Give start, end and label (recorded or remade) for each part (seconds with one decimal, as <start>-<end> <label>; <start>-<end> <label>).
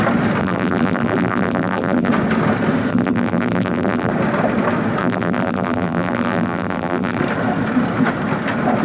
0.0-0.4 recorded; 0.4-2.1 remade; 2.1-2.9 recorded; 2.9-4.1 remade; 4.1-5.0 recorded; 5.0-7.2 remade; 7.2-8.8 recorded